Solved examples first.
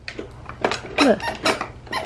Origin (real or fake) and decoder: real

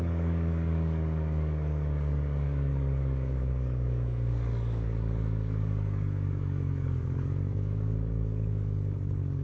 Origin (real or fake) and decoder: fake, codec, DAC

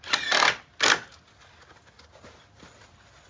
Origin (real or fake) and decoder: real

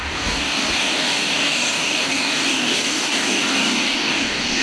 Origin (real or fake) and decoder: fake, codec, DAC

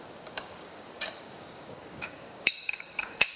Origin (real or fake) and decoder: fake, codec, DAC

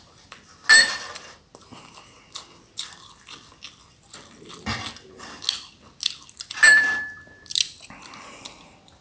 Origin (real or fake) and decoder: real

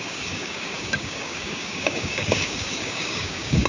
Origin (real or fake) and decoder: fake, codec, DAC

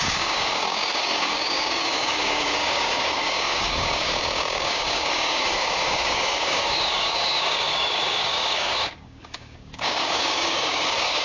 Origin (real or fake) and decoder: fake, codec, DAC